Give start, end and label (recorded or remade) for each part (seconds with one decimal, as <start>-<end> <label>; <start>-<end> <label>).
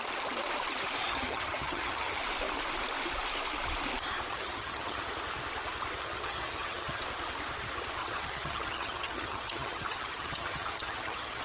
0.0-1.1 recorded; 1.1-2.2 remade; 2.2-4.3 recorded; 4.3-5.0 remade; 5.0-6.0 recorded; 6.0-7.0 remade; 7.0-8.0 recorded; 8.0-11.4 remade